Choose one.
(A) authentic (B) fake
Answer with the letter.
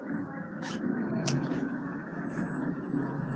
B